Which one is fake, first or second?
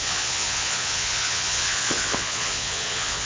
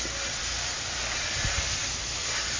first